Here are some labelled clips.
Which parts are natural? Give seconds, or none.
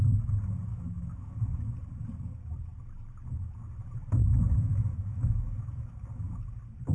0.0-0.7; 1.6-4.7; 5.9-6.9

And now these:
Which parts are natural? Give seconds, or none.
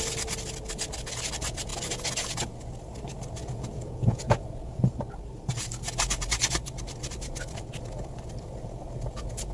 0.0-3.4; 4.9-9.5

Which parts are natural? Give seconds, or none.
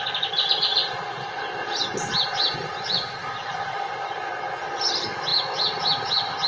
0.0-6.5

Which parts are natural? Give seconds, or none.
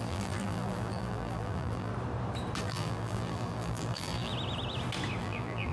1.9-2.6; 4.3-5.2